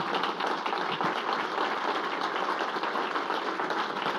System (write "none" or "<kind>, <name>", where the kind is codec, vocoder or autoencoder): none